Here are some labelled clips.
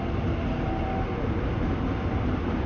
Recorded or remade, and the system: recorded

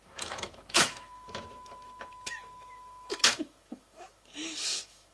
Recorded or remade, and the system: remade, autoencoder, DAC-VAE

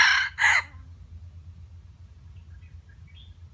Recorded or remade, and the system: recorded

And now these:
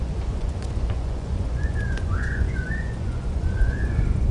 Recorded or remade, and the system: remade, vocoder, Vocos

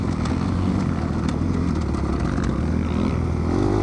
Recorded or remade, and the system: recorded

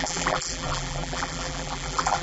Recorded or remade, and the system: remade, vocoder, BigVGAN v2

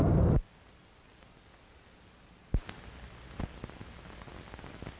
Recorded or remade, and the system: recorded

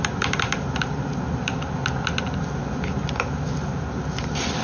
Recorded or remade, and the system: recorded